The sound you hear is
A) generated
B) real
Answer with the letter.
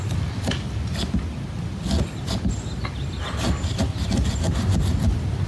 B